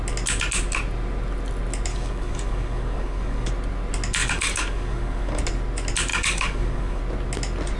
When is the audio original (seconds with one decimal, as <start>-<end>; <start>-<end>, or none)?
0.0-1.9; 3.5-4.2; 5.4-6.1; 7.0-7.8